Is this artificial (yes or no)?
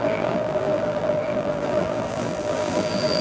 yes